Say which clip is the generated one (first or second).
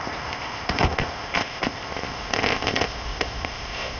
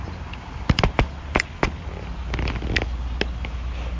first